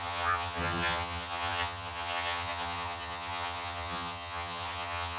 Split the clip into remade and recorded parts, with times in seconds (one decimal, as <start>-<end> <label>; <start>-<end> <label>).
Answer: 0.0-5.2 remade